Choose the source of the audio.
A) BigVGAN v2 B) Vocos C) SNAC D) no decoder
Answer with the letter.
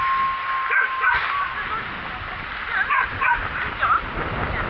D